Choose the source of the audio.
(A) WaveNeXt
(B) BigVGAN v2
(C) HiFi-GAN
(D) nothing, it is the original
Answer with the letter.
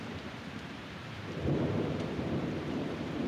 B